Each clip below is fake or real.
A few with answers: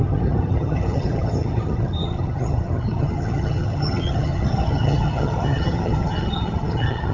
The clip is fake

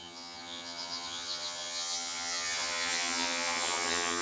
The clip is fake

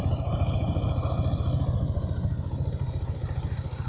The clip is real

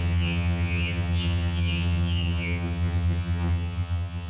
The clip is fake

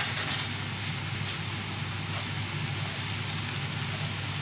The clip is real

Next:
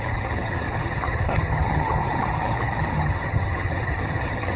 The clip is fake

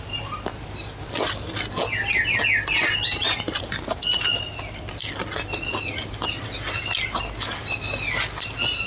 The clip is real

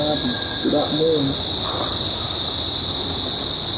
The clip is real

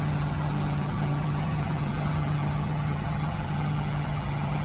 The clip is fake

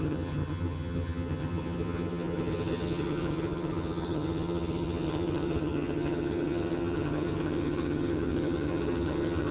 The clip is fake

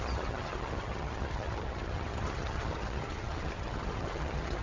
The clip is fake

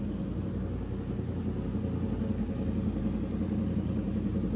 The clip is real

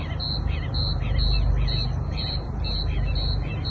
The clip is real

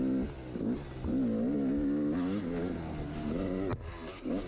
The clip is real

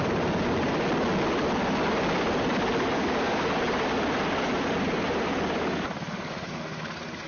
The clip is real